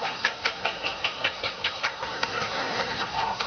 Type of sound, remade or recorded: remade